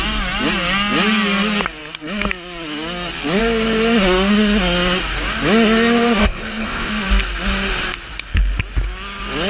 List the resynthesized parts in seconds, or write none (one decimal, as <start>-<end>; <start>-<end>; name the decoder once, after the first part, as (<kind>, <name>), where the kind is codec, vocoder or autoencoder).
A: 6.2-6.9 (codec, ZipCodec)